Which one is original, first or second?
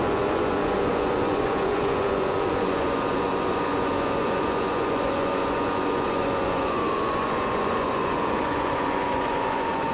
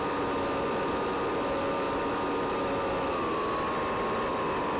second